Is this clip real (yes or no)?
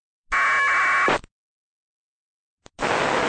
yes